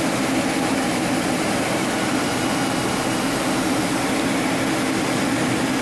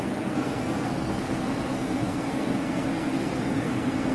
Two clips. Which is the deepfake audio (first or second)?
second